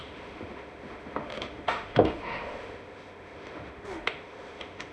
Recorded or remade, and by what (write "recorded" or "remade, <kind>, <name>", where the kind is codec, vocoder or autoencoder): remade, autoencoder, DAC-VAE